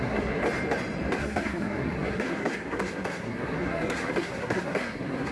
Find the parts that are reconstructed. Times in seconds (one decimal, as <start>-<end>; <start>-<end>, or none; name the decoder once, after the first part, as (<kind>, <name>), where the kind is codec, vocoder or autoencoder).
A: 0.0-0.4 (codec, SNAC); 1.2-5.3